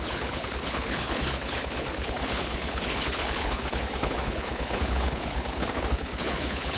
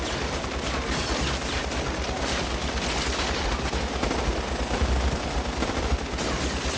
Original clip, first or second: second